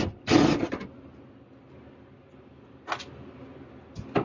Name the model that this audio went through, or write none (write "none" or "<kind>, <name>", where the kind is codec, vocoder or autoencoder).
none